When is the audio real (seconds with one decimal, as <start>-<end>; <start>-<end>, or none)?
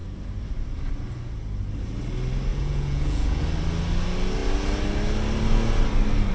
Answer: 0.0-2.5; 3.4-6.3